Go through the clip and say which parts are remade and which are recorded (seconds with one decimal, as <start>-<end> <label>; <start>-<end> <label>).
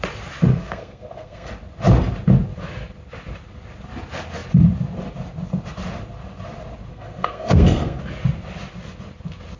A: 0.0-0.5 recorded; 0.5-1.5 remade; 1.5-6.9 recorded; 6.9-8.0 remade; 8.0-9.6 recorded